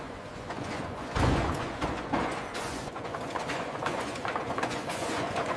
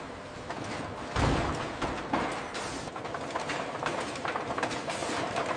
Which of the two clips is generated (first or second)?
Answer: first